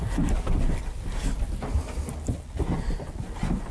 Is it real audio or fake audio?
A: real